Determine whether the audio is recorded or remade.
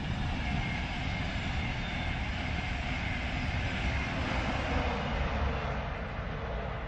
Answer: recorded